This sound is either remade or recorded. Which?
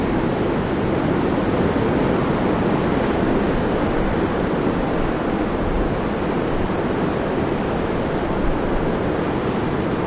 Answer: recorded